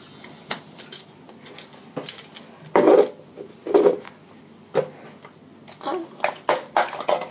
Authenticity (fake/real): real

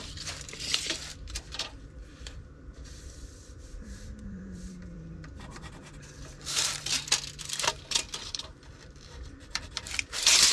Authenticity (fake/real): fake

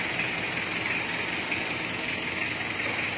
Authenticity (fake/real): real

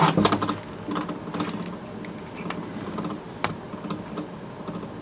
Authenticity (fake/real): real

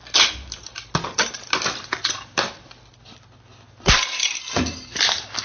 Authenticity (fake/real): real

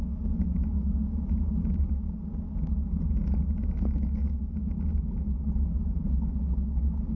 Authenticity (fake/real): real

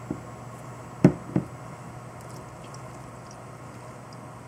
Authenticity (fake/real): real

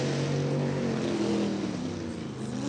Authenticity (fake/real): real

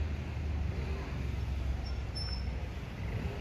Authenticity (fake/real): real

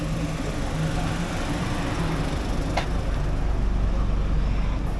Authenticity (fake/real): real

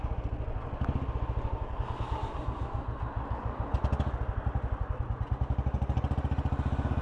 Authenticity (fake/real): real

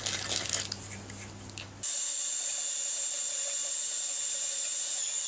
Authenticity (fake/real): real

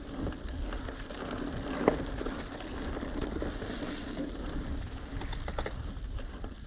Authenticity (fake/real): real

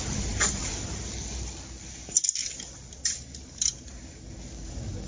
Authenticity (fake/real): real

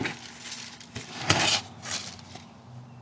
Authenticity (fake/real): real